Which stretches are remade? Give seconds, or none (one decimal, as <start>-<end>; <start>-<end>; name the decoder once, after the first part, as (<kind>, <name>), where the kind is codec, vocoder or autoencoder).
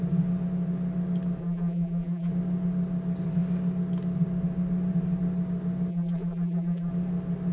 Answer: 1.4-2.3 (vocoder, BigVGAN v2); 5.9-6.9